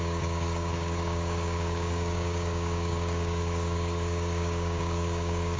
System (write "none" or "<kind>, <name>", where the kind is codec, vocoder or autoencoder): codec, DAC